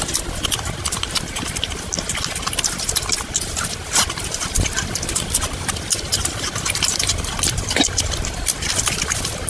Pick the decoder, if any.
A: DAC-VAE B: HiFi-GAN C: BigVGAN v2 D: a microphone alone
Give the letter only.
D